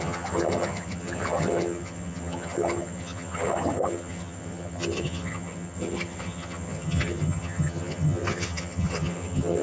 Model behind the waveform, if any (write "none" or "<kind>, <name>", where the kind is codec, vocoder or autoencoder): vocoder, HiFi-GAN